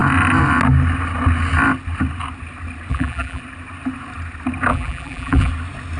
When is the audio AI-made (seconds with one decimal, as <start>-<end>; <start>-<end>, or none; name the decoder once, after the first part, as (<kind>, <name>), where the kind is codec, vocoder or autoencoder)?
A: 2.9-3.4 (vocoder, BigVGAN v2); 4.7-5.5